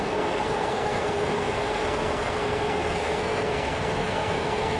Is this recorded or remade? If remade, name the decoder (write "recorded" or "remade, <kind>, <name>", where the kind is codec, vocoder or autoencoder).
remade, codec, SNAC